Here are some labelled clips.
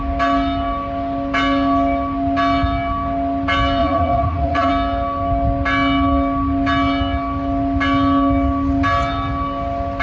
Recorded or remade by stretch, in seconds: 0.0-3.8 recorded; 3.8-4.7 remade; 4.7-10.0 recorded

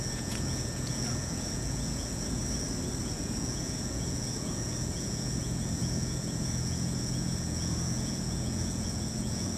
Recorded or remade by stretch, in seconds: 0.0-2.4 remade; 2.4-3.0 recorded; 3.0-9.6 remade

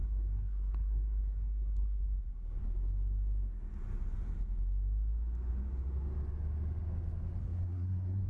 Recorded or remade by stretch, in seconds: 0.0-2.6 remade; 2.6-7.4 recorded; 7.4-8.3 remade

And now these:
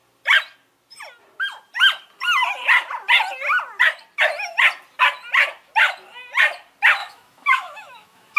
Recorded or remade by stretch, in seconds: 0.0-7.0 recorded; 7.0-8.4 remade

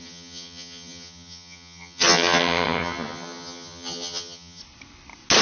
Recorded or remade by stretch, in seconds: 0.0-4.6 remade; 4.6-5.4 recorded

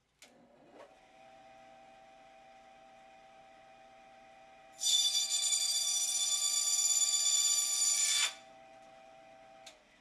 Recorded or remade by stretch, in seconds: 0.0-10.0 recorded